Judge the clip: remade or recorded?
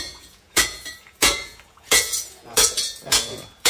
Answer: remade